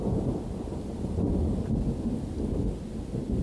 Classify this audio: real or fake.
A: real